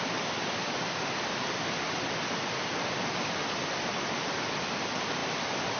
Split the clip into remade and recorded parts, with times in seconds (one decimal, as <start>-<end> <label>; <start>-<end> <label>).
0.0-5.8 recorded